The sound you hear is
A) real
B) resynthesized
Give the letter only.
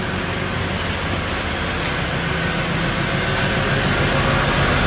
A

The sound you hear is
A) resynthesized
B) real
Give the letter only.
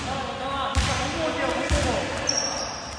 B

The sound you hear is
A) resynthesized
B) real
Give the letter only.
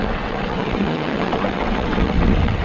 A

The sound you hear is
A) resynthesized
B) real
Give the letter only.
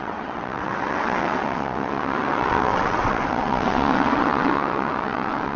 A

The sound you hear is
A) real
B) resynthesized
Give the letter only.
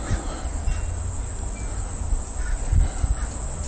A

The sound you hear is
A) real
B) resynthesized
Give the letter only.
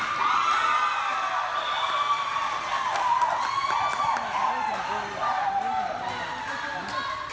A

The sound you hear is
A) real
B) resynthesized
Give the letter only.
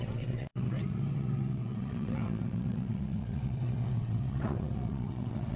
B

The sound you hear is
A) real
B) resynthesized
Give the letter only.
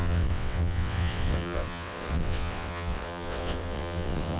B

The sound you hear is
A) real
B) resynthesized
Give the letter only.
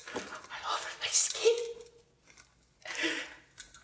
A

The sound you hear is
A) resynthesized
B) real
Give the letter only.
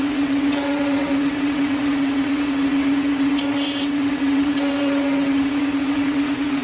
A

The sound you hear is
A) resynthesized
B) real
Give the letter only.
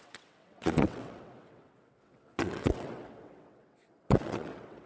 A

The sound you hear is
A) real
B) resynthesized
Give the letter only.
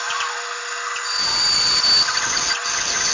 A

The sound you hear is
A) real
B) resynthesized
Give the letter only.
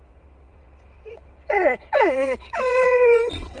B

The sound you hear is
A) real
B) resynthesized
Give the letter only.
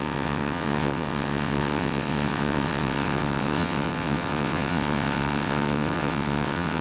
B